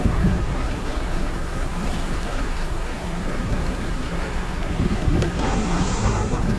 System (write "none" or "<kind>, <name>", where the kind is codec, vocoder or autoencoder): codec, SNAC